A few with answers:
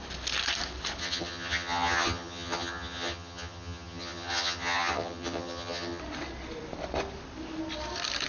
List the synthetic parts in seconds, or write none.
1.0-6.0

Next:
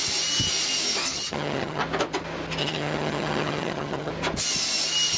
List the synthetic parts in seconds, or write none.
1.1-1.8; 2.6-4.1

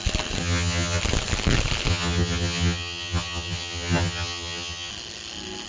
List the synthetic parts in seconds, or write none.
0.4-1.0; 1.9-4.9

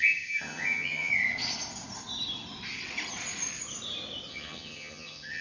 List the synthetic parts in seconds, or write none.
0.0-1.1; 4.3-5.4

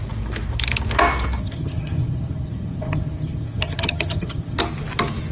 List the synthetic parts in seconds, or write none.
1.4-4.6

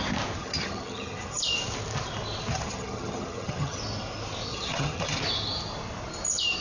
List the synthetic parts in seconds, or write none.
0.4-1.4; 2.5-3.8; 4.5-5.2

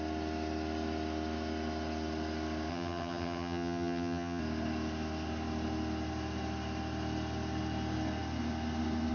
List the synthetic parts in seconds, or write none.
2.7-4.4